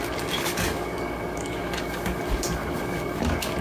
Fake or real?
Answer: fake